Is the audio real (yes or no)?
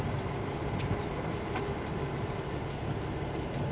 yes